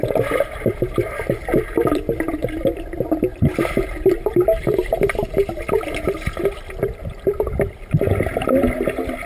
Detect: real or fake fake